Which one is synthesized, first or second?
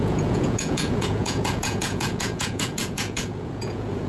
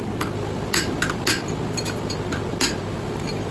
first